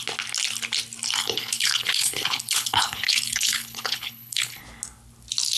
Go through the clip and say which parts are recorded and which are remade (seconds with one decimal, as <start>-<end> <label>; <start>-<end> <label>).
0.0-1.2 recorded; 1.2-4.6 remade; 4.6-5.6 recorded